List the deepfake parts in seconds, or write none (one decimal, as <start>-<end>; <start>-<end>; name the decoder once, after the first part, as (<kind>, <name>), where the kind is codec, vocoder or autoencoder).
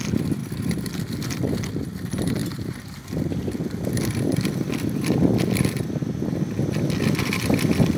0.4-1.7 (vocoder, BigVGAN v2); 2.4-5.9